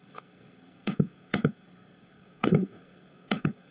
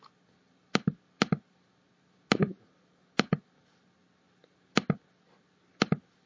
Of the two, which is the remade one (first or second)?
first